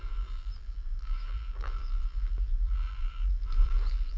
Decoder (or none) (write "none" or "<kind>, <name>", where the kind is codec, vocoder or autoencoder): vocoder, BigVGAN v2